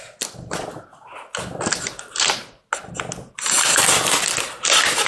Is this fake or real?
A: real